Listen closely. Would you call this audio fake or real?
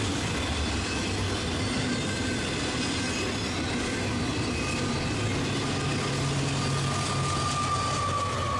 real